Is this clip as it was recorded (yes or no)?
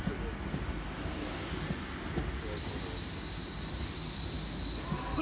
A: yes